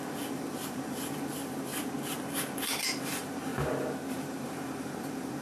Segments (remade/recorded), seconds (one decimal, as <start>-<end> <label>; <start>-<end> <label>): 0.0-1.7 remade; 1.7-2.8 recorded; 2.8-3.5 remade; 3.5-4.1 recorded; 4.1-5.4 remade